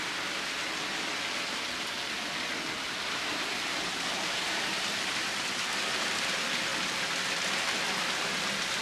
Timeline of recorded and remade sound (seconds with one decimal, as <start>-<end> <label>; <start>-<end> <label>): 0.0-8.8 recorded